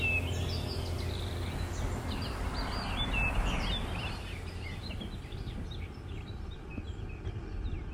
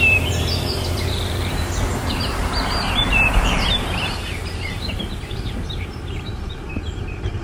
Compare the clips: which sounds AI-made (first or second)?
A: second